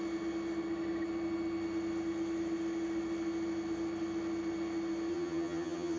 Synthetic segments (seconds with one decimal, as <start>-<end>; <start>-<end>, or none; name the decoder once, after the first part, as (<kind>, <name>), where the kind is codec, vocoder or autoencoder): 5.1-6.0 (vocoder, HiFi-GAN)